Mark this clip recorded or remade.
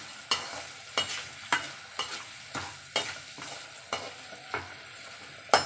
recorded